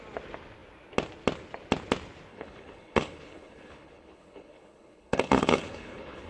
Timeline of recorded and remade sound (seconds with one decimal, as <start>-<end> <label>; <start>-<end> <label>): 0.0-2.3 recorded; 2.3-6.3 remade